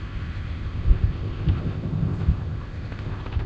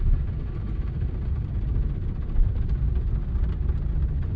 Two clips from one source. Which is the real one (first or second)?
second